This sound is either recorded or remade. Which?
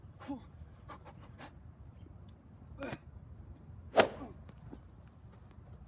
recorded